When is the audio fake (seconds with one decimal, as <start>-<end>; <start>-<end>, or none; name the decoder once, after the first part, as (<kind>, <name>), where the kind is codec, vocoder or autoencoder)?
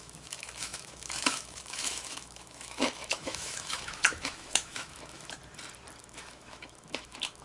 0.0-5.4 (autoencoder, DAC-VAE); 6.0-7.4